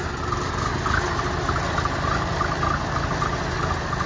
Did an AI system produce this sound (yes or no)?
no